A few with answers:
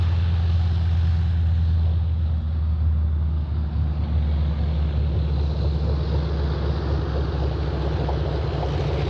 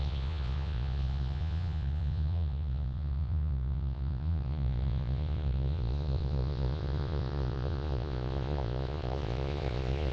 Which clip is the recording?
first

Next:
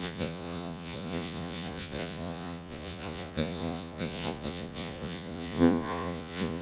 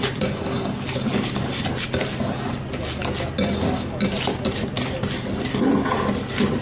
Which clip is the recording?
second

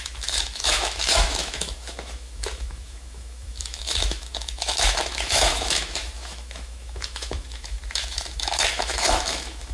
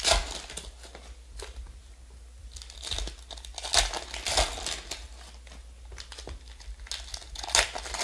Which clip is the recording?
second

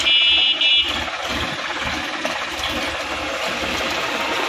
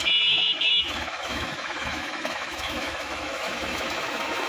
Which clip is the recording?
first